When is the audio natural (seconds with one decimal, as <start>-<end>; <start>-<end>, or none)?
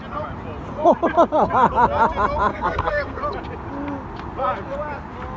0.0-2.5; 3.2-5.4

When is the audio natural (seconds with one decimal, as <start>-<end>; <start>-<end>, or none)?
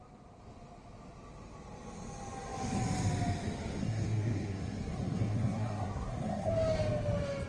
0.0-3.8; 6.5-7.5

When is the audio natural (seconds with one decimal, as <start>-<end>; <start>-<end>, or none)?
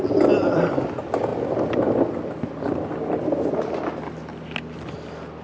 0.0-5.4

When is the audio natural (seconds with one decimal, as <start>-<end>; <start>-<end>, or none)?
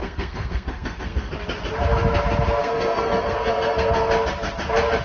1.3-2.6; 4.1-5.0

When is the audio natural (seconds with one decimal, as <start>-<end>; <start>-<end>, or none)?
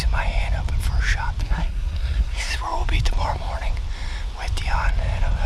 0.0-1.4; 2.5-5.5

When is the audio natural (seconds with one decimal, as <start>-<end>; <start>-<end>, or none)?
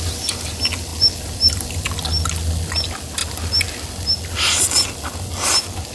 0.0-5.9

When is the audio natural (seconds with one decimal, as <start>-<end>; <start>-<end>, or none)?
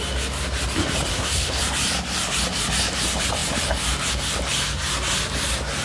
0.0-1.1; 1.6-5.8